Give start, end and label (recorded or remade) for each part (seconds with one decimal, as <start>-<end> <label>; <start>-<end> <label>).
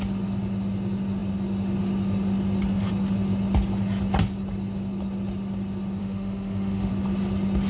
0.0-6.0 recorded; 6.0-6.9 remade; 6.9-7.7 recorded